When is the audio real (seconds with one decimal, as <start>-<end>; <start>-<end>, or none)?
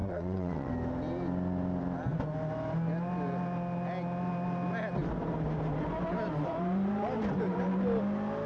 0.7-8.5